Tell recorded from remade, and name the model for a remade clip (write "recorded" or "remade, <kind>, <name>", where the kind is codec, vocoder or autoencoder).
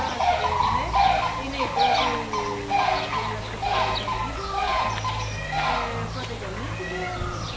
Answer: recorded